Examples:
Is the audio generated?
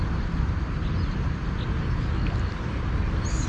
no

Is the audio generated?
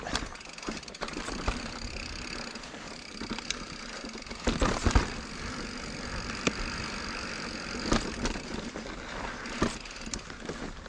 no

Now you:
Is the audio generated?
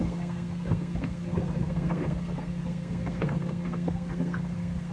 yes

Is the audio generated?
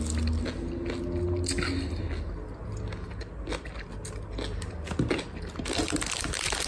no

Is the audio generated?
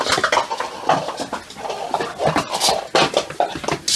no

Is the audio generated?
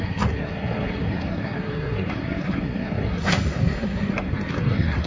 yes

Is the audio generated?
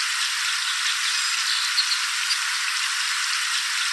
no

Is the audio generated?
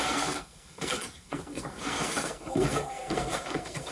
yes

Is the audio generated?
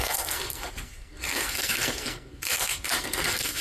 yes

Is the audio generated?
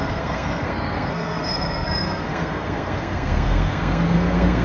yes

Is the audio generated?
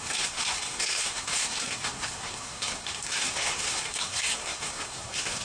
yes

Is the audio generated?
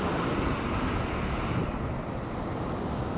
no